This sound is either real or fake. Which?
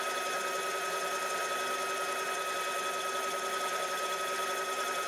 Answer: real